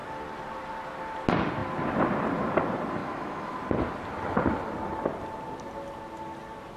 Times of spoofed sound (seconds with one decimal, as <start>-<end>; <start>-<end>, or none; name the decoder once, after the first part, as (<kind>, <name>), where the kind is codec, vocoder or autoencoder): 3.0-3.5 (autoencoder, DAC-VAE)